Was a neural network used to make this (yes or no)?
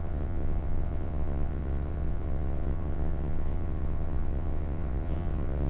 yes